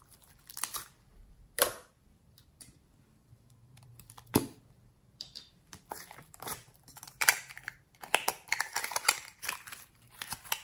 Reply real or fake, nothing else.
fake